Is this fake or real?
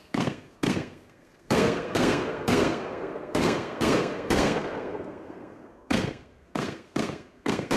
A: fake